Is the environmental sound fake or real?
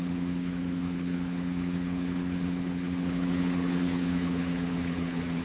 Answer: fake